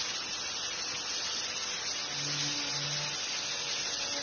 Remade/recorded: recorded